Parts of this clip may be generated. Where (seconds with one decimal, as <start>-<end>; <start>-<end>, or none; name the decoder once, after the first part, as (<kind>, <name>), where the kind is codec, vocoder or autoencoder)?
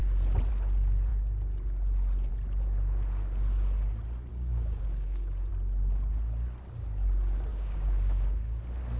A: 4.3-5.5 (codec, DAC); 7.5-8.6